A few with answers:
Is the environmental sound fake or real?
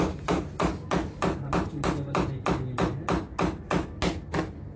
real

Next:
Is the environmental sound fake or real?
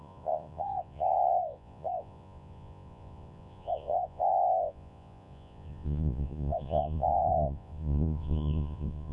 fake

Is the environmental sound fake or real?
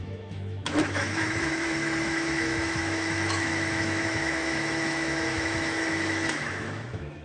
fake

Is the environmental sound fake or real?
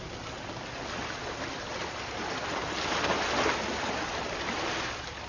real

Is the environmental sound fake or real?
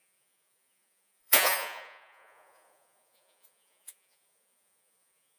fake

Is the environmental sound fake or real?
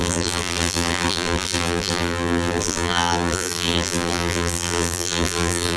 fake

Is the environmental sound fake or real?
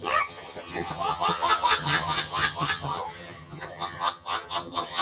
fake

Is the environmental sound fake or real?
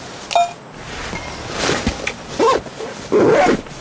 real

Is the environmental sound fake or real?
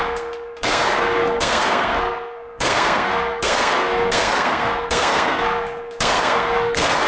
fake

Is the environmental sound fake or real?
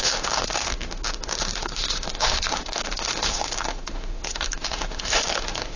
fake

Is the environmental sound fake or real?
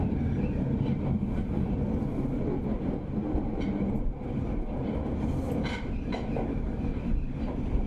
real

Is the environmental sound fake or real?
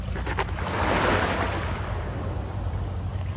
real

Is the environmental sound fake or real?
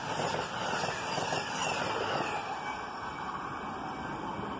real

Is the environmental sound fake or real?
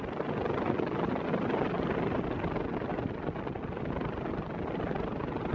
real